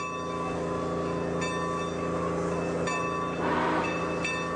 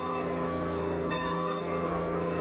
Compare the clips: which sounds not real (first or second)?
second